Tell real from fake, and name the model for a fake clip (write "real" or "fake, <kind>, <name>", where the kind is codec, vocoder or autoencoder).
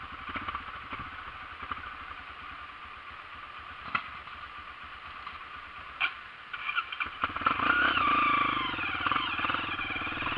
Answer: real